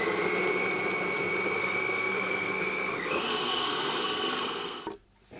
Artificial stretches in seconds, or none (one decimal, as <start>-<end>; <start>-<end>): 1.6-4.8